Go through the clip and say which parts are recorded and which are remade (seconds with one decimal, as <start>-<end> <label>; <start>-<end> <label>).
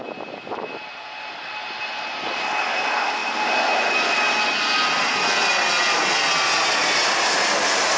0.0-8.0 recorded